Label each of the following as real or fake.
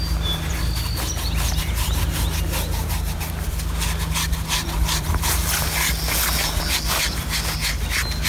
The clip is real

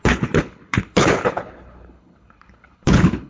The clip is fake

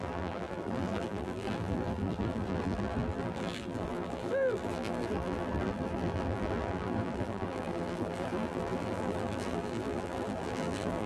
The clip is fake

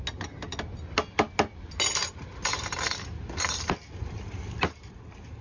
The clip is real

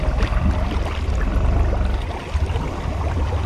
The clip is real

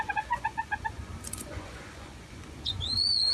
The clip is fake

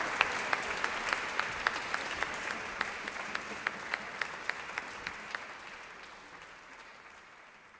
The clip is real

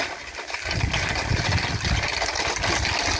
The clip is real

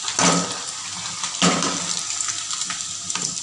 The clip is real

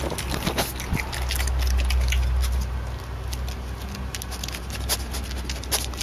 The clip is real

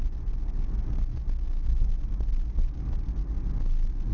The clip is real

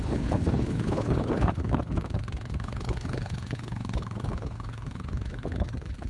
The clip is fake